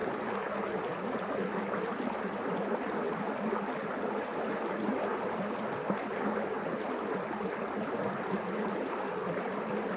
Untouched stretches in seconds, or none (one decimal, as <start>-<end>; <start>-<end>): 0.0-10.0